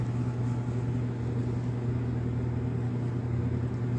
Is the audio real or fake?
real